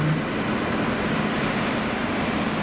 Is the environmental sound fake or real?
real